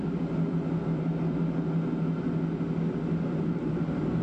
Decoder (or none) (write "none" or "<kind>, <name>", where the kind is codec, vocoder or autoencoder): none